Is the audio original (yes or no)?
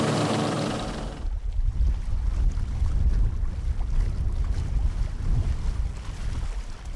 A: yes